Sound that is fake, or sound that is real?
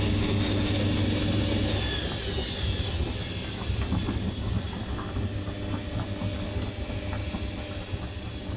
real